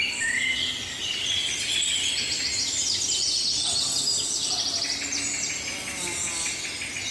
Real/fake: real